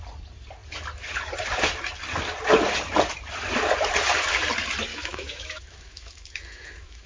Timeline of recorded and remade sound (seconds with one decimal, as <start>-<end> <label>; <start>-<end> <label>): 0.0-4.9 recorded; 4.9-7.1 remade